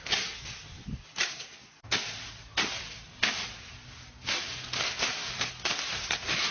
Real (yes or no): yes